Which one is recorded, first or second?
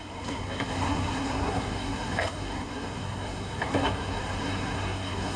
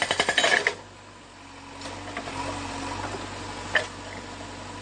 second